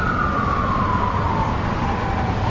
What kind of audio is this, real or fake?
real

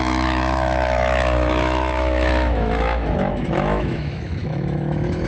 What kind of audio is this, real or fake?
fake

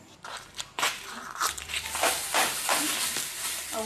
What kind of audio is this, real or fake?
fake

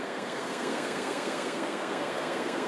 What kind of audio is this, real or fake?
fake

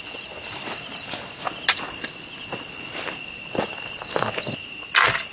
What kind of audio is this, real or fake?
real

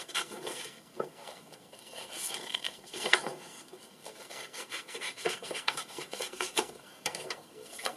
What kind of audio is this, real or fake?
fake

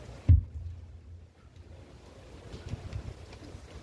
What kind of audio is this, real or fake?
real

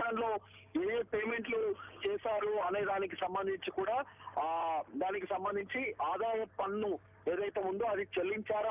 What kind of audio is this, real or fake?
real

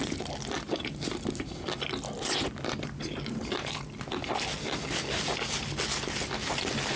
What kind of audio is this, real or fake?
real